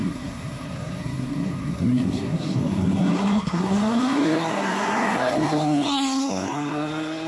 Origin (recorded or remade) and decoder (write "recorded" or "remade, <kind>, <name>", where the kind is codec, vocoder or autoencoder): remade, codec, SNAC